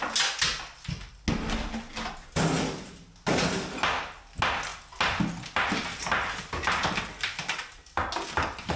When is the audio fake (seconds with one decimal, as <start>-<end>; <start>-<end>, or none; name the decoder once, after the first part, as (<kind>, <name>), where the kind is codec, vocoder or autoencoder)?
none